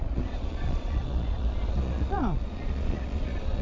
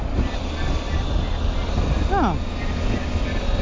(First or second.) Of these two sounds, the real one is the second